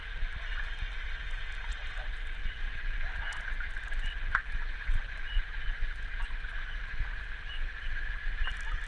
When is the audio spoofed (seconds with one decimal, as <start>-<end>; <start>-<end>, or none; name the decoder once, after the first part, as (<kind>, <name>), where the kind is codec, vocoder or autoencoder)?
0.0-5.3 (vocoder, BigVGAN v2); 7.1-8.9